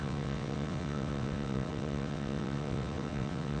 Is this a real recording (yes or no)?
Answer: no